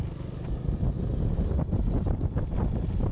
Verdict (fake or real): real